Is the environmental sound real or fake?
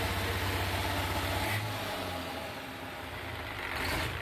real